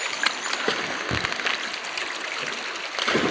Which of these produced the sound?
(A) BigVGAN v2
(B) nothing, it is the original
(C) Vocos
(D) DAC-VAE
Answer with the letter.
B